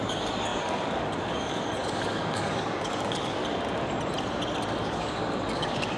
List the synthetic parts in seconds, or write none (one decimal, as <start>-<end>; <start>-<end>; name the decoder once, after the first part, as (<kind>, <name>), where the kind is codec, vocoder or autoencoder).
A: 0.0-3.4 (codec, DAC); 4.8-6.0

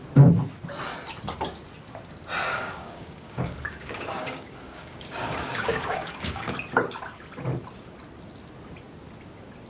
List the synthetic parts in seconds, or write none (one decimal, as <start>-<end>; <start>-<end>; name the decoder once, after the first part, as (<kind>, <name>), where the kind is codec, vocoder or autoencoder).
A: 2.5-6.5 (codec, DAC)

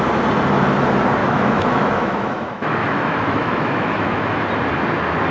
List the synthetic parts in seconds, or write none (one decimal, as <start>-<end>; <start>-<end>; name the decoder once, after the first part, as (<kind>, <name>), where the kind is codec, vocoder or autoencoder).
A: 1.2-4.4 (autoencoder, DAC-VAE)

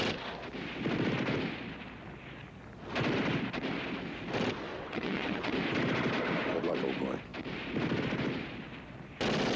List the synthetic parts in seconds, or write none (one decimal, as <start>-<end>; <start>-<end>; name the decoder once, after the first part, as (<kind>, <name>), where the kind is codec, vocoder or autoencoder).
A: 4.7-5.5 (vocoder, WaveNeXt)

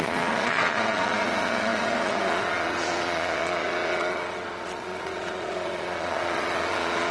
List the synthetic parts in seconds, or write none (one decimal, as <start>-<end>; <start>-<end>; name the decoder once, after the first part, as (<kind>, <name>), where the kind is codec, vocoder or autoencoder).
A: 0.0-7.1 (vocoder, Vocos)

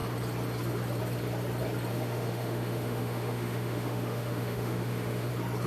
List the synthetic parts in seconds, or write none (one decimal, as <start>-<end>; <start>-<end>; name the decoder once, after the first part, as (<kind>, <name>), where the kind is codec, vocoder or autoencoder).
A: 1.9-5.3 (autoencoder, DAC-VAE)